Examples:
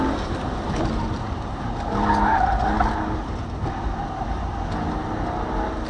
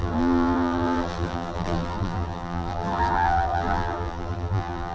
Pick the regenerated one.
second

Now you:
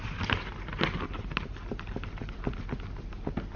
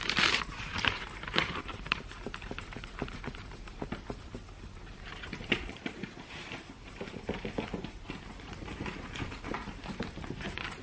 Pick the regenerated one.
second